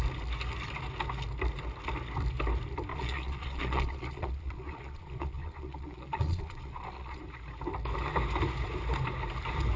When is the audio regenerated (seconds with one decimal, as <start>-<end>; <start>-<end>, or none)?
2.9-7.2